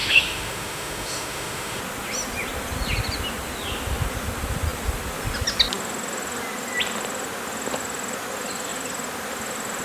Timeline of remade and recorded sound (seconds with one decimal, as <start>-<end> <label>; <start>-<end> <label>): 0.0-1.8 remade; 1.8-9.8 recorded